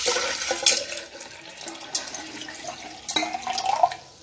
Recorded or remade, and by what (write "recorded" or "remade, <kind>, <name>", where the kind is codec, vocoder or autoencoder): recorded